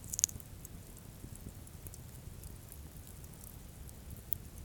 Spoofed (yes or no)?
no